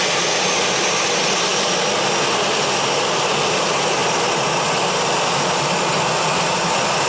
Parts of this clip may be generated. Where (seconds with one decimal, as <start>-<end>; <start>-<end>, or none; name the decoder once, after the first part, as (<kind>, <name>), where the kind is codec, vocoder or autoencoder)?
none